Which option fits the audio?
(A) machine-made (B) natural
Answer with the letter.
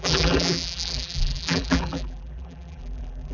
A